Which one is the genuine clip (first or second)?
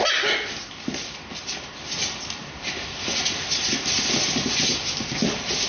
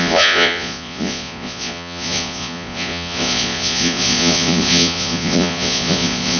first